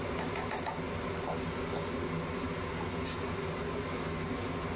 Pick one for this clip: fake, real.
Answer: real